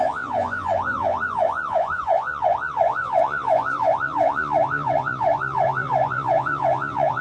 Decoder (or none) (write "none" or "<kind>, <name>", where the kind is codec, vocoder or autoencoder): vocoder, Vocos